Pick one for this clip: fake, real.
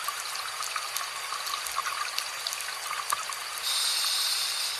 real